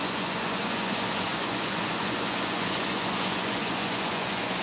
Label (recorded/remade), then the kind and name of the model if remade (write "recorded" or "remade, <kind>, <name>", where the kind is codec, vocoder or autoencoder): remade, vocoder, Vocos